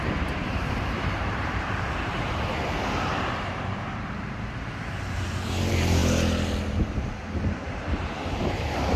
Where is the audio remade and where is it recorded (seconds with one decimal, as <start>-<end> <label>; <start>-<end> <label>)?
0.0-6.0 remade; 6.0-7.4 recorded; 7.4-9.0 remade